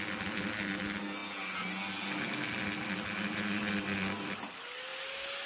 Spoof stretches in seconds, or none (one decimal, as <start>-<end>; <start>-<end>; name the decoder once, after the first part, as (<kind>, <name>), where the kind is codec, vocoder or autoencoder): none